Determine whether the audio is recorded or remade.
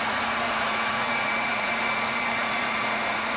remade